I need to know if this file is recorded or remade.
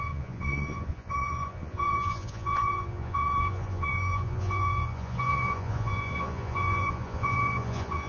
remade